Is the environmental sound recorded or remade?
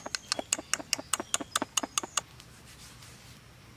recorded